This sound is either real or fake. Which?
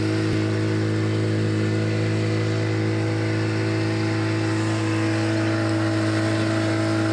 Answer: real